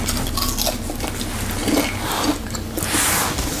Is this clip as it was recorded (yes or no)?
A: yes